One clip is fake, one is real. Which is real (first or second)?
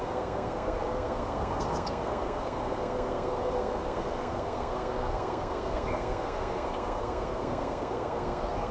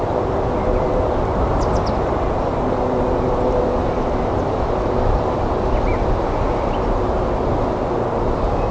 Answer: second